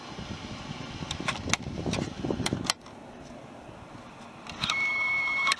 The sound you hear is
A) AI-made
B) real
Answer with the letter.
B